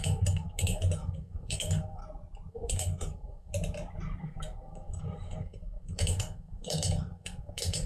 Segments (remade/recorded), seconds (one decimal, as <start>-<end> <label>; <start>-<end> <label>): 0.0-2.0 remade; 2.0-2.5 recorded; 2.5-3.5 remade; 3.5-4.2 recorded; 4.2-7.9 remade